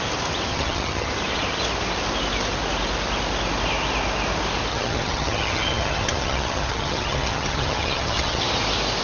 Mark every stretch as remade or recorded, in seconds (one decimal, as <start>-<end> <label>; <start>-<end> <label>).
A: 0.0-0.5 recorded; 0.5-1.1 remade; 1.1-4.7 recorded; 4.7-8.4 remade; 8.4-9.0 recorded